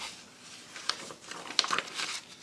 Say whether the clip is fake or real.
real